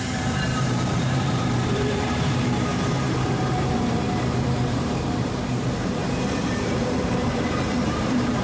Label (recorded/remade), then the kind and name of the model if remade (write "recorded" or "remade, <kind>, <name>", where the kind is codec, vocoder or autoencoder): remade, vocoder, BigVGAN v2